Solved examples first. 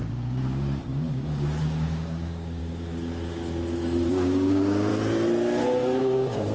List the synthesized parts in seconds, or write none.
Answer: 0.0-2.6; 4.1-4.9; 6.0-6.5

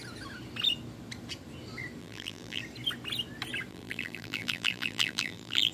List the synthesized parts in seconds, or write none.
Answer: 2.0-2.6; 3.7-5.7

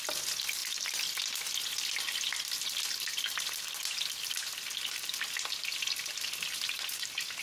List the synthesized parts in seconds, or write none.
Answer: none

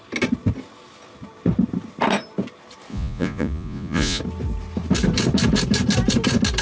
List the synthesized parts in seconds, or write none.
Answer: 2.9-4.2

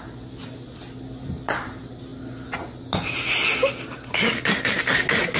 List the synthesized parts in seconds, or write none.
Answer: none

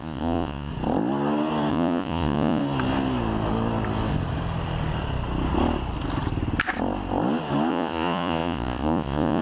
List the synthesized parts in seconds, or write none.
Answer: 0.0-0.7; 1.7-2.6; 7.7-9.4